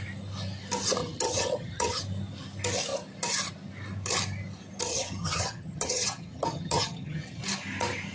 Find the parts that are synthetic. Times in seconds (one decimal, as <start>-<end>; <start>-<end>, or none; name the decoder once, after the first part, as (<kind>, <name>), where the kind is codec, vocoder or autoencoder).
1.0-2.0 (vocoder, HiFi-GAN); 4.9-7.4